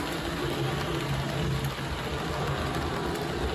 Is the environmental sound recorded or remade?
recorded